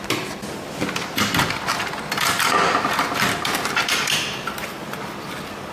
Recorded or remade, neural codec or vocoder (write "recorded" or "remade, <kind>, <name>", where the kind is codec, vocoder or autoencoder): recorded